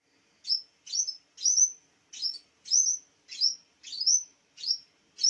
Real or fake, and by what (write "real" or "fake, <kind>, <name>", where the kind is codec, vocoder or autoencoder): real